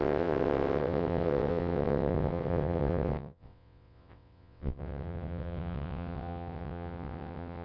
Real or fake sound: fake